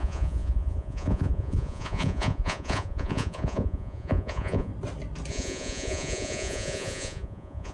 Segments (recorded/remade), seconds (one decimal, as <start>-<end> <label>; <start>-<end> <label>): 0.0-4.7 remade; 4.7-5.3 recorded; 5.3-7.7 remade